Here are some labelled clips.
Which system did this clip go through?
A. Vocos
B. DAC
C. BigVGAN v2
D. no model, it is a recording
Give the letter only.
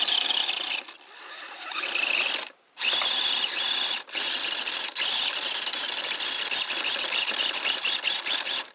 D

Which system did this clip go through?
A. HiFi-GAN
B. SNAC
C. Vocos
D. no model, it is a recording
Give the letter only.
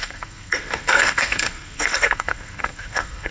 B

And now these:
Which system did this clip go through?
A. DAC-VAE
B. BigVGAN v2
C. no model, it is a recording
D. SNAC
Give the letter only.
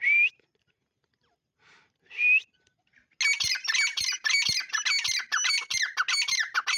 C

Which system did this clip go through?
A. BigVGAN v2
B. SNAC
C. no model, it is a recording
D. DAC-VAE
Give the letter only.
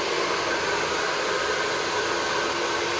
C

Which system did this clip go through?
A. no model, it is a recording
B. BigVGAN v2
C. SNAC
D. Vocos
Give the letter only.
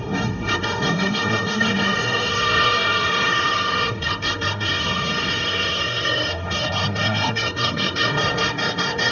C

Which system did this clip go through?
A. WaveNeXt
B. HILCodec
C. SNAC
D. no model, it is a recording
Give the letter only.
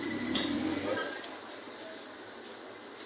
D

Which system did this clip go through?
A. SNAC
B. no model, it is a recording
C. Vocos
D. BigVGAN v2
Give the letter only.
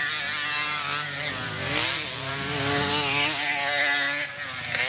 B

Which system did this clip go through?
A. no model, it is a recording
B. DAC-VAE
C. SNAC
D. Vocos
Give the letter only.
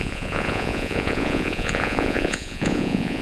D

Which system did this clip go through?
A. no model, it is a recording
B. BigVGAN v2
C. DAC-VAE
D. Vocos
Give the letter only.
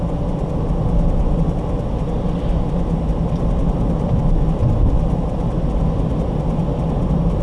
A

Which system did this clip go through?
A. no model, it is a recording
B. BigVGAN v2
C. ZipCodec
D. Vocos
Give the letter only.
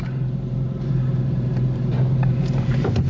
B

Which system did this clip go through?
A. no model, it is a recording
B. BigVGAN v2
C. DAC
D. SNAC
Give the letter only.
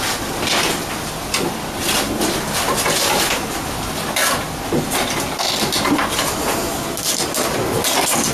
A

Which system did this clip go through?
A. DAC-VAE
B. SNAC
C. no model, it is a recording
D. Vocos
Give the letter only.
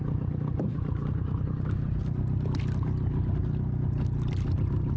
C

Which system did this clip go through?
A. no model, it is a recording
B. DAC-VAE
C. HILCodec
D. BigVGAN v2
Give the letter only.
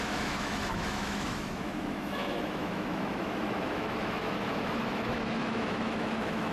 B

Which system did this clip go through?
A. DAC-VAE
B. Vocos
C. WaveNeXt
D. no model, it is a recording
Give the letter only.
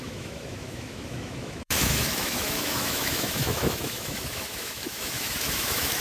A